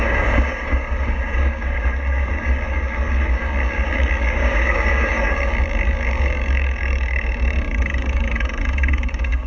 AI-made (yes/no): yes